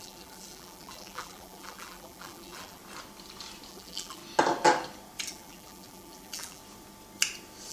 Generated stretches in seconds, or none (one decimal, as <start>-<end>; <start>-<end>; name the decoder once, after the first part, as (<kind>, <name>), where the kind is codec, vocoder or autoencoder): 0.0-2.8 (vocoder, BigVGAN v2); 3.7-4.2; 5.3-6.6